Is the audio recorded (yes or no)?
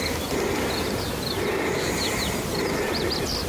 yes